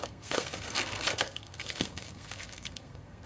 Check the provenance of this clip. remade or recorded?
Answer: remade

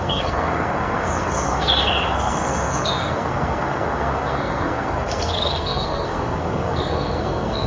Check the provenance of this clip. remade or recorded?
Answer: remade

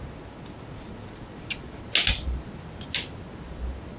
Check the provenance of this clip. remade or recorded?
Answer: recorded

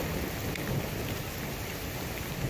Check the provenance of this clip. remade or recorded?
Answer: recorded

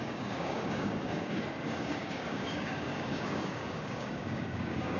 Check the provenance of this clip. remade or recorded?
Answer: remade